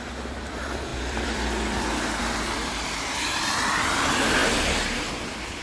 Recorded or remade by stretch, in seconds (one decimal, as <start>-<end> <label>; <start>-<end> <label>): 0.0-5.6 remade